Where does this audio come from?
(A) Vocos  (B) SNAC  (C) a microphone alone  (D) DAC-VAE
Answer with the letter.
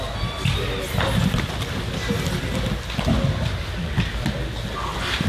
C